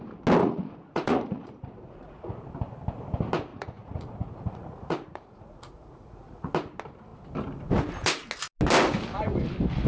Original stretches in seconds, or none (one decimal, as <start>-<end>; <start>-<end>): 0.0-0.4; 2.3-3.5; 6.5-9.9